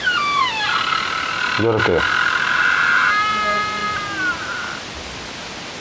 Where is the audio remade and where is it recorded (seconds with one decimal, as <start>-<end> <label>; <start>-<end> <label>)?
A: 0.0-5.8 recorded